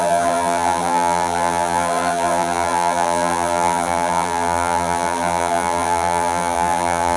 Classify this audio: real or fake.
fake